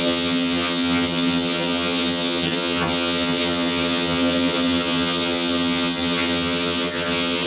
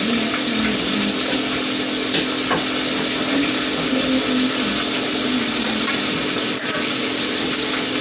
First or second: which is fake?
first